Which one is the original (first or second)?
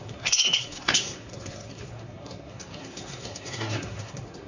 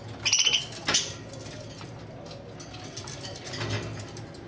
second